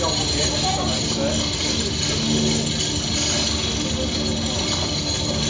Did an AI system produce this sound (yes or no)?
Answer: no